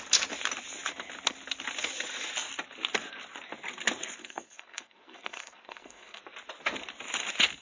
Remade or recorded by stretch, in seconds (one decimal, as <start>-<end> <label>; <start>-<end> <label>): 0.0-4.2 recorded; 4.2-6.2 remade; 6.2-7.6 recorded